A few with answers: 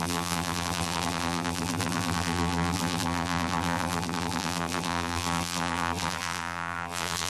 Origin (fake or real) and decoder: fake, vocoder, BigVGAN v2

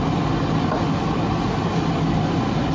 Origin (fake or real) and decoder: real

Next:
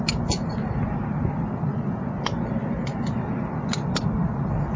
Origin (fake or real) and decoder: real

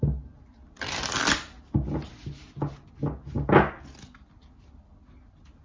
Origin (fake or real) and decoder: real